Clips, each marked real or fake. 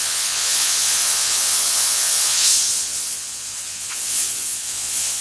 fake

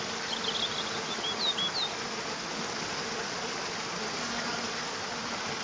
real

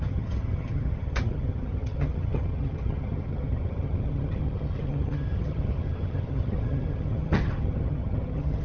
fake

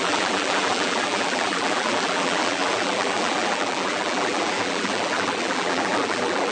fake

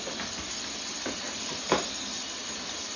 fake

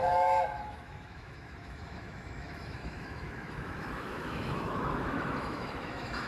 fake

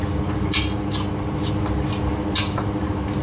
real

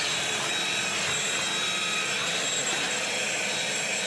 real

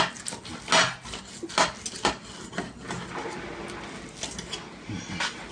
real